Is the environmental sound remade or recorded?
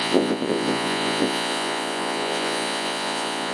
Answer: remade